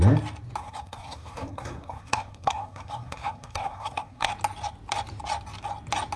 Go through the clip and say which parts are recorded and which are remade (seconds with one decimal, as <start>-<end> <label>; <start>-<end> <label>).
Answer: 0.0-0.6 recorded; 0.6-4.3 remade; 4.3-6.2 recorded